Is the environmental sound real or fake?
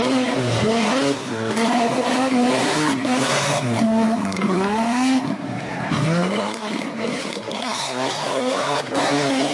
fake